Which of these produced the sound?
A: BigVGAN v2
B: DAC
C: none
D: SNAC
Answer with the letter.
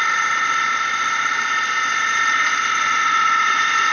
C